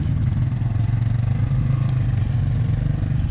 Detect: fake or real real